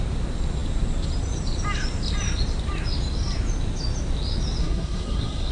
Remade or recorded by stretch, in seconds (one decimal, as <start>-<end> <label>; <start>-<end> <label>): 0.0-4.6 recorded; 4.6-5.5 remade